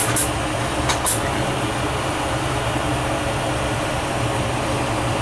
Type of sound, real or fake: real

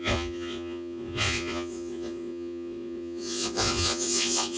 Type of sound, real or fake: fake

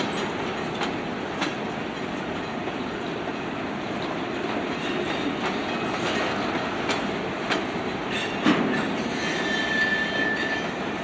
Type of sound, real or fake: real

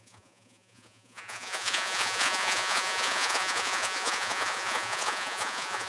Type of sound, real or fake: fake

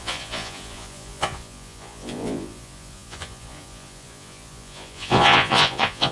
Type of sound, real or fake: fake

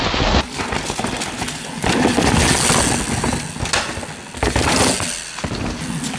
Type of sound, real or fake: real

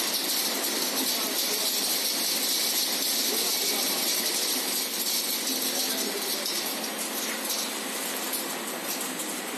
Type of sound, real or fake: real